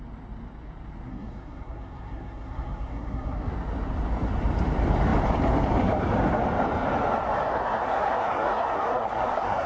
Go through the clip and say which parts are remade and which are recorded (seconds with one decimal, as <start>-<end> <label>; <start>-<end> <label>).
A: 0.0-1.1 recorded; 1.1-3.5 remade; 3.5-7.5 recorded; 7.5-9.7 remade